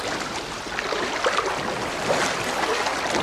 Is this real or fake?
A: real